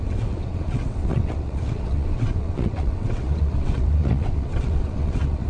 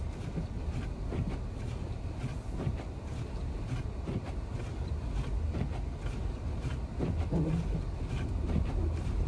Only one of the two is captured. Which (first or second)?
second